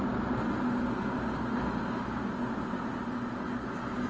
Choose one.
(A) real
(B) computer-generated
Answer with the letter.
A